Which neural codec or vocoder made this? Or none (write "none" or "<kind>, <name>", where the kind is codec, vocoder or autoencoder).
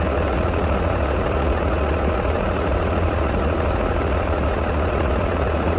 vocoder, Vocos